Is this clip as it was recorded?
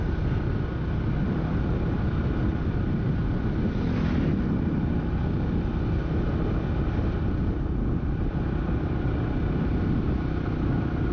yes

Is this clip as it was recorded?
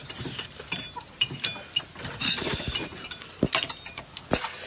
yes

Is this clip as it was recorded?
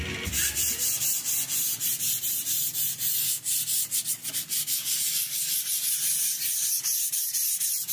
yes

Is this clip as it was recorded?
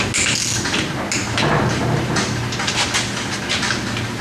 yes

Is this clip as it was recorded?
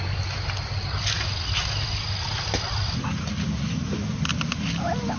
yes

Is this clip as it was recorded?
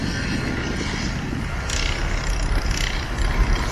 yes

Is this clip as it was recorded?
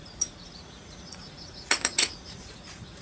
no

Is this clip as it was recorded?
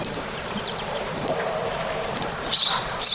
no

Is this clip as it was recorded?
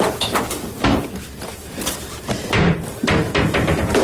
no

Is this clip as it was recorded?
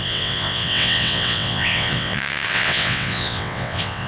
no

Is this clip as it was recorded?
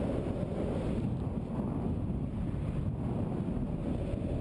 yes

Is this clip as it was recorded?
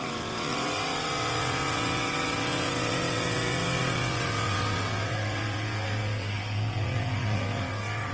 no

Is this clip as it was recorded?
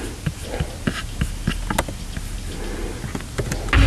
yes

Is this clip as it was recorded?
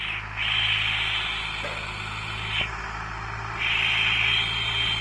yes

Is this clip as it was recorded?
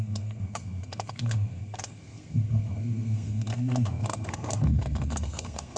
no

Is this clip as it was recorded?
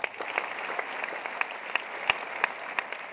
yes